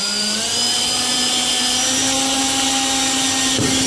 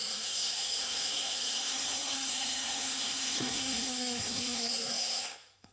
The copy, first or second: second